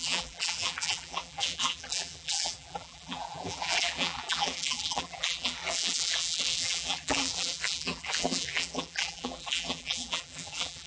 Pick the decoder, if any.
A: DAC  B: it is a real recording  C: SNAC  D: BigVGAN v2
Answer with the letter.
D